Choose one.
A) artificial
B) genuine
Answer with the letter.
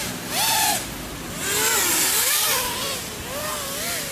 A